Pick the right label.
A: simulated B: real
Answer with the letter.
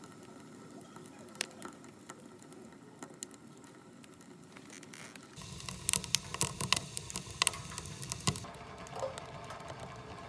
B